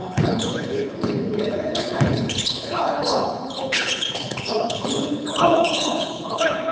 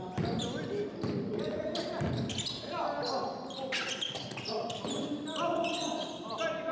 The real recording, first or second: second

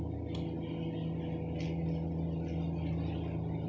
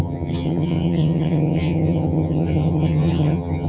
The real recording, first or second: first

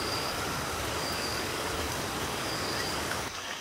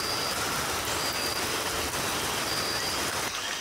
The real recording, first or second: second